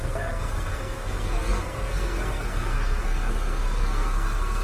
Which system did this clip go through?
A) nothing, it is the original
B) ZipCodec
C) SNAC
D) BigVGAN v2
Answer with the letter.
C